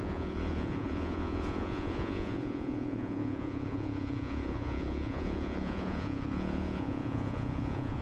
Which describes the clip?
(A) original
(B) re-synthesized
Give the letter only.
B